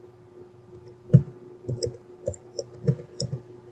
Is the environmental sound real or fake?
real